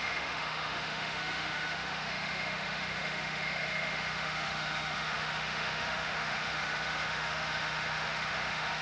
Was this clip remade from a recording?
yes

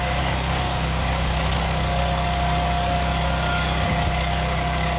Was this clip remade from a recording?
yes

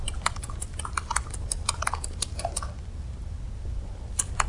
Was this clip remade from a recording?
no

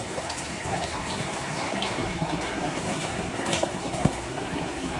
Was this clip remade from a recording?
yes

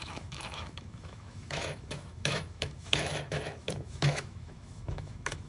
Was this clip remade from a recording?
yes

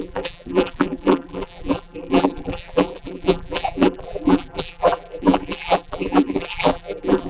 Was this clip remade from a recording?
yes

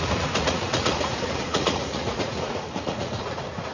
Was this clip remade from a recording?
yes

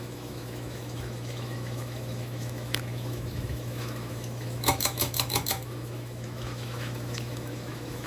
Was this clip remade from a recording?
yes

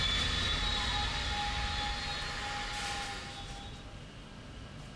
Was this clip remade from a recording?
no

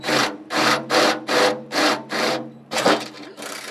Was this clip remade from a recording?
yes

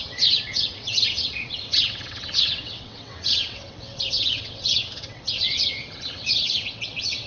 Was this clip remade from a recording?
yes